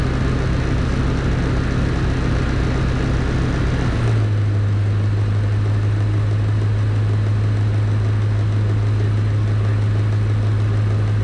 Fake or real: real